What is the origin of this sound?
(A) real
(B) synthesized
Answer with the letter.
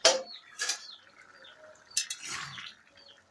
B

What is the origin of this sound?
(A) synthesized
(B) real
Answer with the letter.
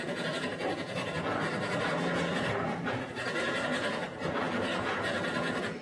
A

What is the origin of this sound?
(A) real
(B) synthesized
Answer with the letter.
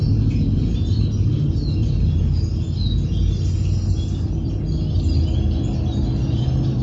A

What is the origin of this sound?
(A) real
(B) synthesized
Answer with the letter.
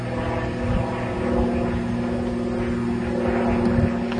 A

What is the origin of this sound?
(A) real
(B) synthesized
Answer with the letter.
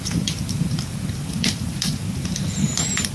B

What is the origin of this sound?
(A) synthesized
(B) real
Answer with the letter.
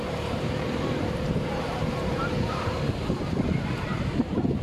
A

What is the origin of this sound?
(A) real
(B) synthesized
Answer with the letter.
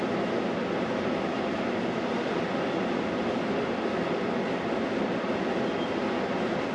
A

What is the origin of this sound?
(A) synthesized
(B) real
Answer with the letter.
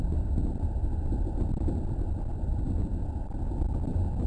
B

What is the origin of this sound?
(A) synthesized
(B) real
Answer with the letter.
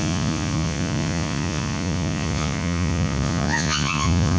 A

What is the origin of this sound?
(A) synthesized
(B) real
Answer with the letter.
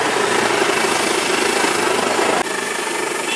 B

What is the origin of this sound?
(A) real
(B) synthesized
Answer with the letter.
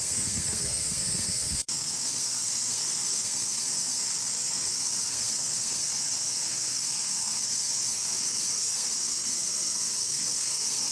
B